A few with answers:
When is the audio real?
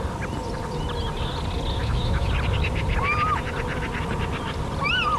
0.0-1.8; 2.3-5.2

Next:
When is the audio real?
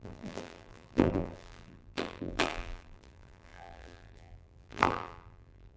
none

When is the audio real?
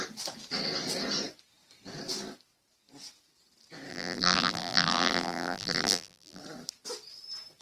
0.0-3.9; 6.4-7.6